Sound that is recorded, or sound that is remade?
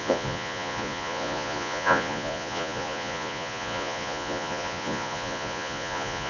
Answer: remade